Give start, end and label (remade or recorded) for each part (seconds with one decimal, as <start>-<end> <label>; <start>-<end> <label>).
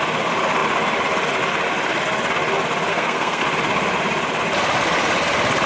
0.0-2.9 recorded; 2.9-3.4 remade; 3.4-5.7 recorded